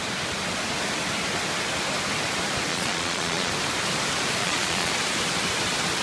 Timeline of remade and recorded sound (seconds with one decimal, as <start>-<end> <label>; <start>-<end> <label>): 0.0-2.7 recorded; 2.7-3.5 remade; 3.5-4.4 recorded; 4.4-4.9 remade; 4.9-6.0 recorded